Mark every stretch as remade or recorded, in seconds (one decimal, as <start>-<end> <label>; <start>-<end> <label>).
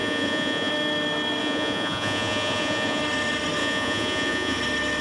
0.0-0.7 remade; 0.7-1.4 recorded; 1.4-3.0 remade; 3.0-3.6 recorded; 3.6-4.6 remade; 4.6-5.0 recorded